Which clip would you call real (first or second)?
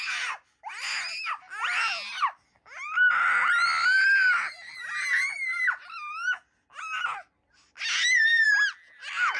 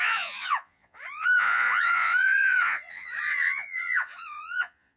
first